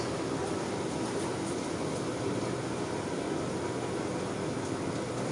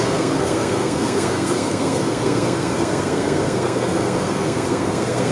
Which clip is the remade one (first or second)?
second